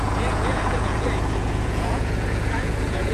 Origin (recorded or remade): remade